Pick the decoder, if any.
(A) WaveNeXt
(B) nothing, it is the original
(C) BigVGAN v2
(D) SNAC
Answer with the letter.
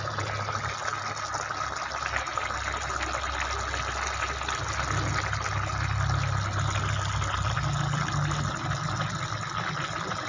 B